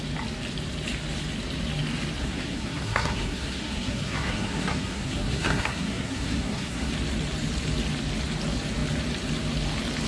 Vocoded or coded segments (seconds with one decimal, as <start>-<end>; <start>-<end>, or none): 2.2-6.9